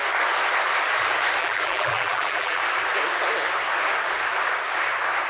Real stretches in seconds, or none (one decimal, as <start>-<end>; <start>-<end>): 0.0-1.4; 2.6-5.3